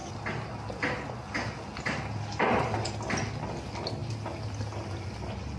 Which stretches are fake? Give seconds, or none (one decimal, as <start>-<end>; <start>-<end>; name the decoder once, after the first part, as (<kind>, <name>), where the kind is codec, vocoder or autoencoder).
none